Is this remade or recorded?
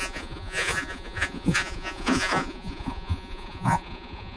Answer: remade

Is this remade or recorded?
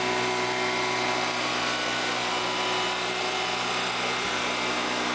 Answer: recorded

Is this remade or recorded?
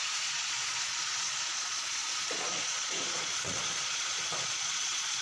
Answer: remade